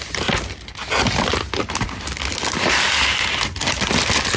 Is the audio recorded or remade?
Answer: recorded